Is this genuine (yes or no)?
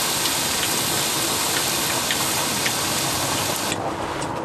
yes